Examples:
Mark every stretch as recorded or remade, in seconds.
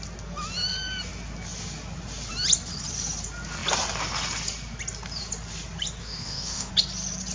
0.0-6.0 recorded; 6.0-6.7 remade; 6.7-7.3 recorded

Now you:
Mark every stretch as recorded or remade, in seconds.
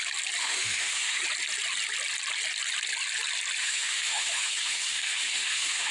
0.0-0.4 recorded; 0.4-1.2 remade; 1.2-3.6 recorded; 3.6-5.9 remade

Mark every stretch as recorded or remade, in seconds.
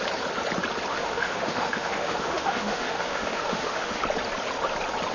0.0-0.9 recorded; 0.9-4.0 remade; 4.0-5.1 recorded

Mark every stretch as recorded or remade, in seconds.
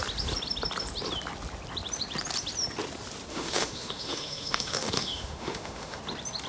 0.0-3.3 recorded; 3.3-6.0 remade; 6.0-6.5 recorded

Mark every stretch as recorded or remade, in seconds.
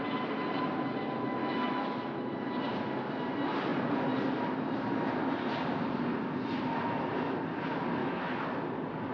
0.0-1.4 recorded; 1.4-2.0 remade; 2.0-8.0 recorded; 8.0-8.6 remade; 8.6-9.1 recorded